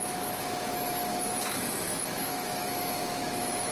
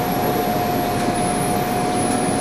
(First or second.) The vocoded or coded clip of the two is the first